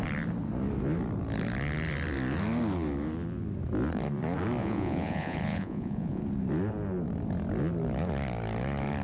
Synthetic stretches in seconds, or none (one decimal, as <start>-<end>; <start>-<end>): 4.6-6.2